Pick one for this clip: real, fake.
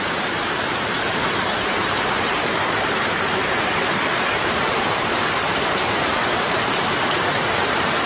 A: fake